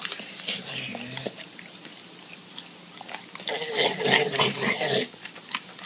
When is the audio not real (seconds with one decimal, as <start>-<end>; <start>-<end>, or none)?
0.0-0.9; 4.4-5.9